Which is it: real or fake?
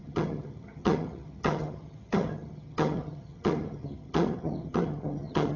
fake